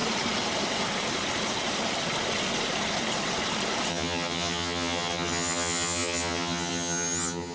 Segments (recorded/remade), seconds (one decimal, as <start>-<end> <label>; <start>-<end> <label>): 0.0-3.9 recorded; 3.9-7.5 remade